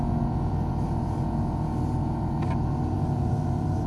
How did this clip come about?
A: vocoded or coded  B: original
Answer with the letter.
B